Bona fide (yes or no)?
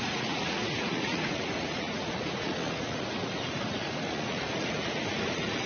no